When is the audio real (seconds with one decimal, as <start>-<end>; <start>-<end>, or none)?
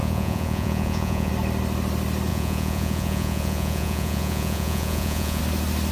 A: 1.3-2.3; 5.4-5.9